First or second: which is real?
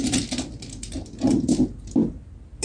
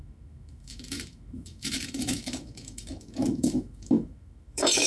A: first